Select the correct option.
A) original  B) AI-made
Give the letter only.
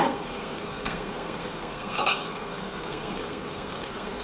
B